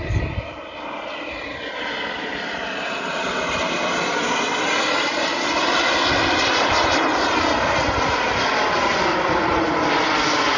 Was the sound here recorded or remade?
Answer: recorded